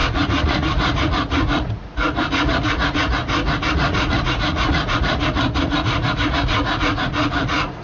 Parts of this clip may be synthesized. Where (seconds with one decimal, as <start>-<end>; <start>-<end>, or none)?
0.0-3.2; 3.7-7.8